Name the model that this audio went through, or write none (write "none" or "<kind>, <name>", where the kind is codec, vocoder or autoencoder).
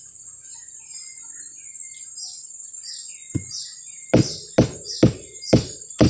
none